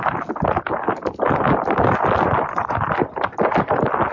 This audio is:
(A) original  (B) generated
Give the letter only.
A